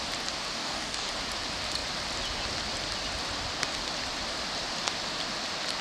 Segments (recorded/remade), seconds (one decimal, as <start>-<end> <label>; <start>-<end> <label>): 0.0-0.5 recorded; 0.5-1.1 remade; 1.1-5.8 recorded